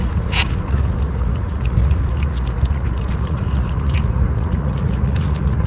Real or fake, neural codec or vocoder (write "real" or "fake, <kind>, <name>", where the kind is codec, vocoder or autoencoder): fake, vocoder, Vocos